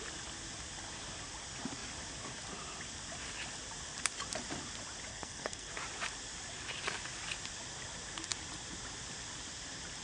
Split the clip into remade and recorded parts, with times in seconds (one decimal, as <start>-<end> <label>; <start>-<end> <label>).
0.0-5.1 recorded; 5.1-5.7 remade; 5.7-10.0 recorded